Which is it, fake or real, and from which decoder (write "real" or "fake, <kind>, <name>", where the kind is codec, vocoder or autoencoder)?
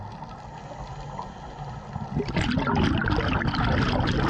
real